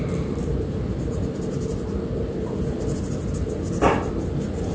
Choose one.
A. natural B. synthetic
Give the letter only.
A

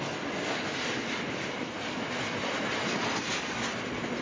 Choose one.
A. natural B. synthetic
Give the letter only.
A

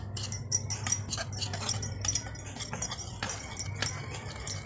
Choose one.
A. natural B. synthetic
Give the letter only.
A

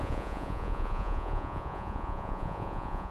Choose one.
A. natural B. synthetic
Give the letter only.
B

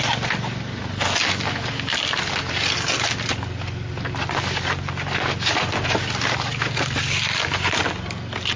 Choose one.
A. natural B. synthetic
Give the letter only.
A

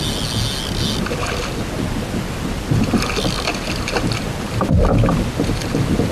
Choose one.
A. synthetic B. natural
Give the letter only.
B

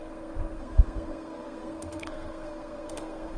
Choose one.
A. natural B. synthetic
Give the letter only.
B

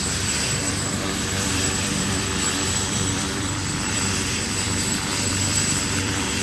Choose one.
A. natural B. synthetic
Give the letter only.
B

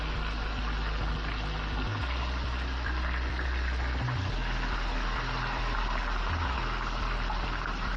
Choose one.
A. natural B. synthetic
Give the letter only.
A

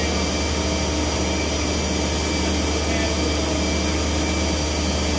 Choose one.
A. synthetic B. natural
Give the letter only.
B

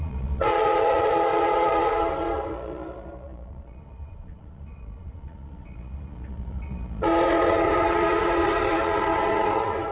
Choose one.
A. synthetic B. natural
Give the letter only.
A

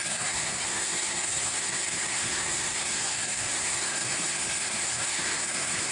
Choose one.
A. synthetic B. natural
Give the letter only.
A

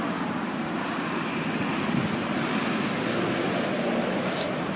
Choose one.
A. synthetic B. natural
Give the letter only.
B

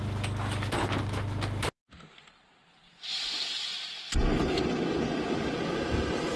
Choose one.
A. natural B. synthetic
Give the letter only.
A